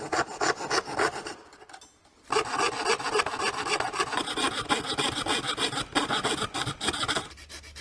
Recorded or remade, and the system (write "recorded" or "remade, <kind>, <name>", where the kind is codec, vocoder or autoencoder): recorded